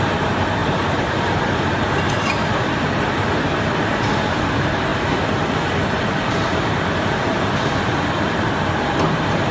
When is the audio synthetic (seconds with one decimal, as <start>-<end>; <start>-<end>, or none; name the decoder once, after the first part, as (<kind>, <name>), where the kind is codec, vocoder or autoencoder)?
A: 0.0-9.5 (vocoder, BigVGAN v2)